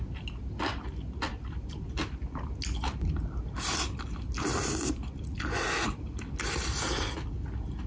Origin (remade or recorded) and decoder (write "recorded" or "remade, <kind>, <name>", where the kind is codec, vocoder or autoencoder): recorded